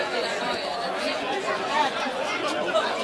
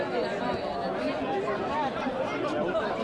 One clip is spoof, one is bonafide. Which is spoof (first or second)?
first